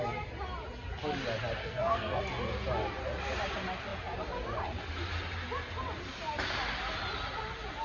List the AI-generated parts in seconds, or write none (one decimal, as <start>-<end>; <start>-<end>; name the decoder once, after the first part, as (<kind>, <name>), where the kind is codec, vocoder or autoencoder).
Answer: 1.6-2.2 (codec, SNAC)